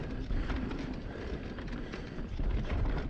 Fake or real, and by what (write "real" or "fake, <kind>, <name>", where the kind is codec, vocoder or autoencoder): real